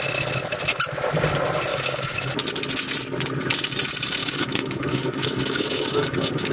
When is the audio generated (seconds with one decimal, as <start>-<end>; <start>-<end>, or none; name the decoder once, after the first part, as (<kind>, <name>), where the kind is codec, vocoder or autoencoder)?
1.7-2.3 (codec, DAC); 4.2-6.5